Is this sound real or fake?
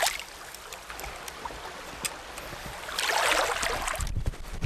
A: real